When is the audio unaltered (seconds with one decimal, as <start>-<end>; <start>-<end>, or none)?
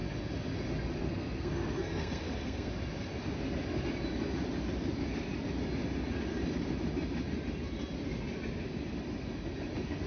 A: 0.0-1.0; 2.7-10.1